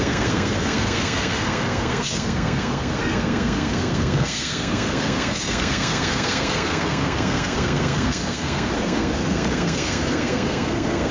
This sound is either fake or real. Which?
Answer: fake